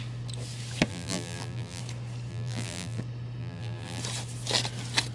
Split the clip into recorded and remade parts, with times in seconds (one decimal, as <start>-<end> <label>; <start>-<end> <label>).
0.0-0.9 recorded; 0.9-1.8 remade; 1.8-2.3 recorded; 2.3-3.0 remade; 3.0-3.4 recorded; 3.4-4.0 remade; 4.0-5.1 recorded